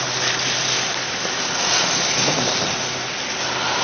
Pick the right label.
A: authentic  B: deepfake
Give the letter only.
A